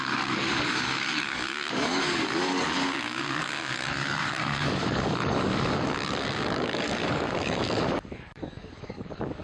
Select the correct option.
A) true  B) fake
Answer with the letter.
B